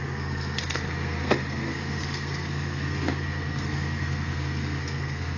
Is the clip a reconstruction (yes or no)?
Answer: yes